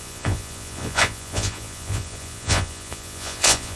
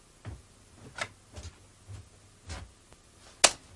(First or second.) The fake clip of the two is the first